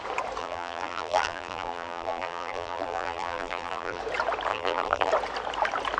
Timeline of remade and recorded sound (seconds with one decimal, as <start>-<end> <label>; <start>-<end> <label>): 0.0-0.4 recorded; 0.4-4.0 remade; 4.0-4.5 recorded; 4.5-5.1 remade; 5.1-6.0 recorded